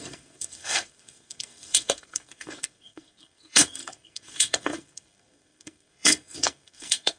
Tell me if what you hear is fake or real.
fake